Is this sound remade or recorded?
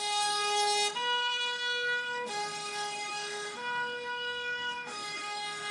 remade